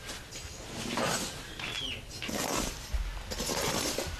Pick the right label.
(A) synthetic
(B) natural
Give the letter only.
B